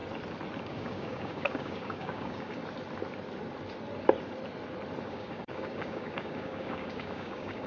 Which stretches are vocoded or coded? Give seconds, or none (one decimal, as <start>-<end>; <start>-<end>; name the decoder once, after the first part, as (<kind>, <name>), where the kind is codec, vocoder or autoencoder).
0.6-2.6 (codec, DAC); 5.0-7.7